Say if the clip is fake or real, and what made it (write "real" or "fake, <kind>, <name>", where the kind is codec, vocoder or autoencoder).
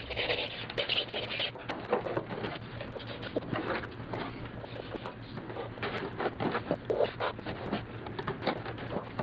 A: real